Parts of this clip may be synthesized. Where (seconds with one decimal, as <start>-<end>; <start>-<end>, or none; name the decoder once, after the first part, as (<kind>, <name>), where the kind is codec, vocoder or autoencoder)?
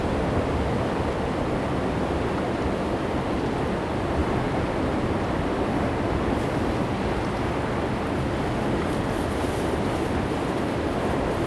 none